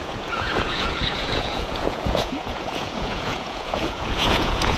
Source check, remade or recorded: remade